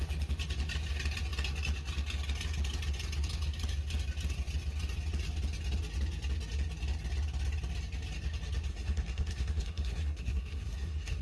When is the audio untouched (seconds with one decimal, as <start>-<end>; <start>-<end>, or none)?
0.0-8.7